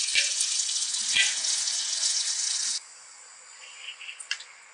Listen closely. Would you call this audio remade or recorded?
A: remade